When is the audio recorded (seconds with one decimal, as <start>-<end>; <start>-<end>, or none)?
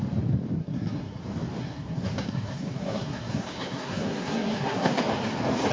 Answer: 0.0-0.6; 1.2-1.6; 5.0-5.7